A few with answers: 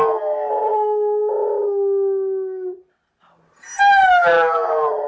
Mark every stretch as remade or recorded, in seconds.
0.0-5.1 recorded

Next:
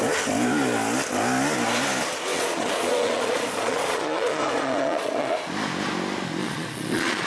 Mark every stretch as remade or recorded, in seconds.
0.0-2.3 recorded; 2.3-5.3 remade; 5.3-6.4 recorded; 6.4-7.3 remade

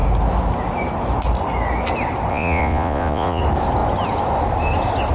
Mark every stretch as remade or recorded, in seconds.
0.0-2.3 recorded; 2.3-3.4 remade; 3.4-5.1 recorded